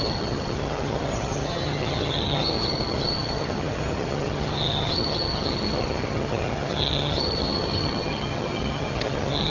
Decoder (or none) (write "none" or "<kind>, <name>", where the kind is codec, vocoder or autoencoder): vocoder, HiFi-GAN